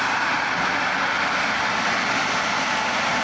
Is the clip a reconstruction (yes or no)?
no